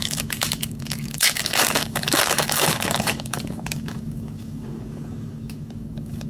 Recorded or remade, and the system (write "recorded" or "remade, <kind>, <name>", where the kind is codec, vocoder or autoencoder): remade, codec, DAC